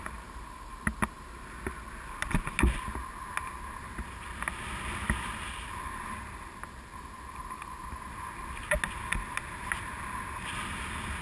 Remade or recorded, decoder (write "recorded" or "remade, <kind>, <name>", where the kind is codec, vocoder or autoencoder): recorded